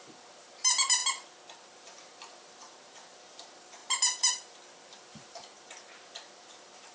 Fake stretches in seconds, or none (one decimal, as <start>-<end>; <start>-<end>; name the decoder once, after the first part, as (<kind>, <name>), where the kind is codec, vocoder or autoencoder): 0.0-1.0 (vocoder, BigVGAN v2); 1.6-6.9